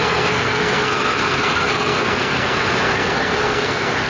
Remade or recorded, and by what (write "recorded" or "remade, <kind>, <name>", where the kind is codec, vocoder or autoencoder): remade, codec, SNAC